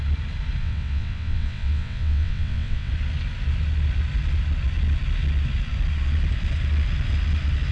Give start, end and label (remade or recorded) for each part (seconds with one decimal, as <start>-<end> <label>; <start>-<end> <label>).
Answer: 0.0-0.6 recorded; 0.6-2.9 remade; 2.9-7.7 recorded